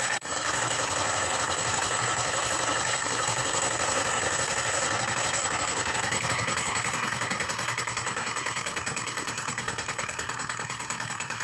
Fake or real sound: fake